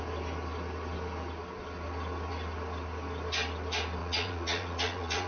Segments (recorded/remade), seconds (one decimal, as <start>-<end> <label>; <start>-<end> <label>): 0.0-4.0 recorded; 4.0-5.3 remade